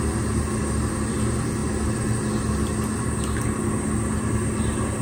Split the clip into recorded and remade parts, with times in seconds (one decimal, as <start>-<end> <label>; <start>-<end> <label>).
0.0-5.0 recorded